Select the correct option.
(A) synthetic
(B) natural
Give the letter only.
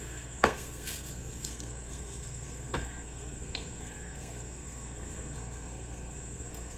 A